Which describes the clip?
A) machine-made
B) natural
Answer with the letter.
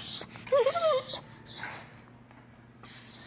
B